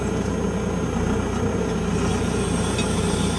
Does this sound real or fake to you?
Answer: real